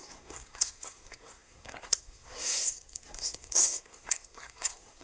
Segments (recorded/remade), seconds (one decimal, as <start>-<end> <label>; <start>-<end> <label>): 0.0-5.0 remade